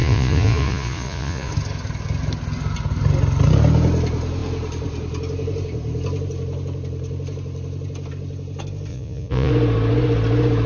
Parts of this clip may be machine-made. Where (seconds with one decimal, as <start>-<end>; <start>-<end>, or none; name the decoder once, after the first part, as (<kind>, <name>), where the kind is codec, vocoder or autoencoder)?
0.0-1.5 (vocoder, Vocos); 8.9-9.5

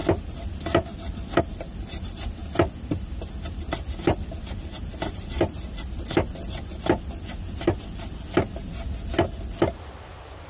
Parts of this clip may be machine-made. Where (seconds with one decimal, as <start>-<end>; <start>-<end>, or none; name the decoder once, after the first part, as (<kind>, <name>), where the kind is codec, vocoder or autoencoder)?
none

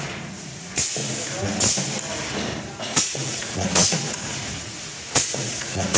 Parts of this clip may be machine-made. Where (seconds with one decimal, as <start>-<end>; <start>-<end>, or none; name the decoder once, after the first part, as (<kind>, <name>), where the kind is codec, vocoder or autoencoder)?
0.0-1.0 (vocoder, Vocos); 2.8-6.0

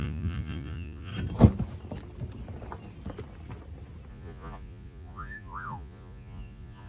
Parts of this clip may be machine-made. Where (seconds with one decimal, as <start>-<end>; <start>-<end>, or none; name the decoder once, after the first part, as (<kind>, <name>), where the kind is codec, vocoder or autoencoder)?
0.0-1.1 (vocoder, Vocos); 4.1-6.9

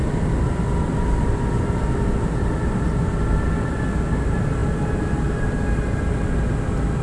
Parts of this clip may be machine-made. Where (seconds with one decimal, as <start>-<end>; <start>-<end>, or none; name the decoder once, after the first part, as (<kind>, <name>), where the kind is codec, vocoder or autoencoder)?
none

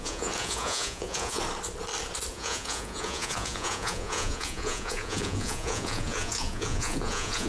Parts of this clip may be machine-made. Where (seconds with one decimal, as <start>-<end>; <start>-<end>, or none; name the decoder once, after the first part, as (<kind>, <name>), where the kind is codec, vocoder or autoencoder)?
0.0-1.4 (vocoder, Vocos); 2.3-7.5

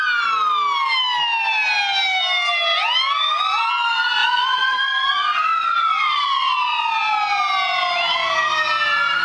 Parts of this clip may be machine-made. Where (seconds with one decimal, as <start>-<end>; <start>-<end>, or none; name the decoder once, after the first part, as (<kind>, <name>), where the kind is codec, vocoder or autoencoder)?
4.2-6.9 (vocoder, Vocos)